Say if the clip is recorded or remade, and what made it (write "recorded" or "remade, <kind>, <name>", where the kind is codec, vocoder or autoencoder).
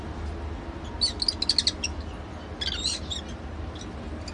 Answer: recorded